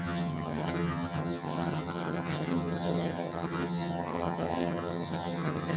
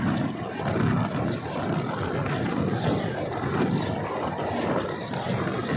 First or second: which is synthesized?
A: first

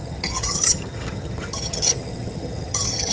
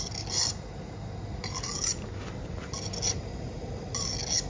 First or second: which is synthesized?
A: first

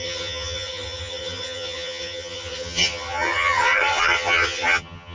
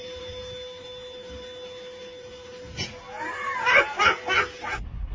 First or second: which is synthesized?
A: first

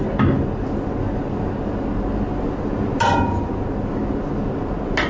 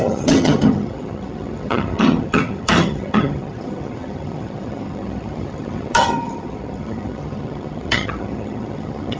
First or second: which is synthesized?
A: second